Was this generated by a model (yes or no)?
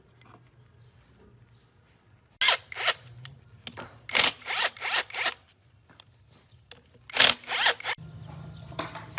no